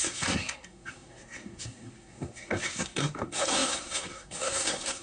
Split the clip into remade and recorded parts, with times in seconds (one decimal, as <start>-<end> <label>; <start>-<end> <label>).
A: 0.0-5.0 remade